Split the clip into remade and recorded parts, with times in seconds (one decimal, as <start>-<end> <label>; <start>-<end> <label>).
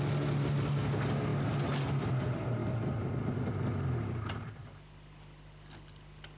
0.0-1.3 recorded; 1.3-2.0 remade; 2.0-2.6 recorded; 2.6-6.4 remade